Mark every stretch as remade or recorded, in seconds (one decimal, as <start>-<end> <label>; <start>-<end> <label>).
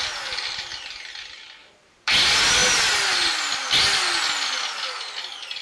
0.0-1.6 recorded; 1.6-2.1 remade; 2.1-5.6 recorded